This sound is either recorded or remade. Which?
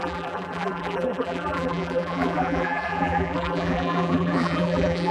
remade